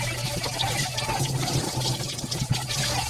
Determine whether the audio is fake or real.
real